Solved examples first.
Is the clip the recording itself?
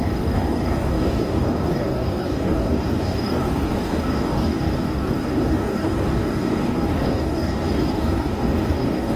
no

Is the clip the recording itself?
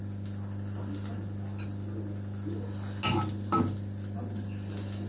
yes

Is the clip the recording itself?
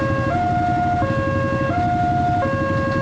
yes